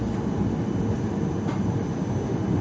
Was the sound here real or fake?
real